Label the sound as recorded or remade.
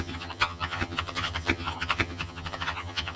remade